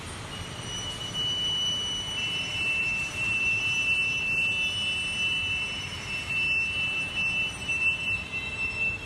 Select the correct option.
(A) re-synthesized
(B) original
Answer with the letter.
A